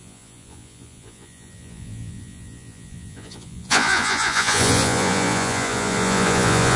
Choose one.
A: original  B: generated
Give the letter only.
B